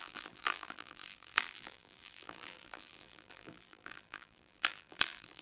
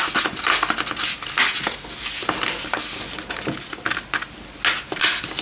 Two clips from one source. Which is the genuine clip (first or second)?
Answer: second